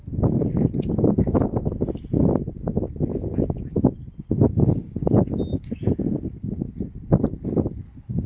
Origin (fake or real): real